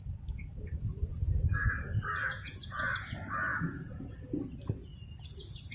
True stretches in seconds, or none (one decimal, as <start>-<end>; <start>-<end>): 0.0-2.2; 2.8-3.5; 4.5-5.7